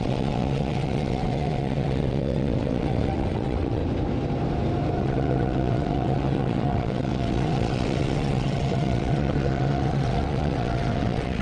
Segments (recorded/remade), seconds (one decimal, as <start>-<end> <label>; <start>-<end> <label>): 0.0-3.8 remade; 3.8-5.0 recorded; 5.0-11.4 remade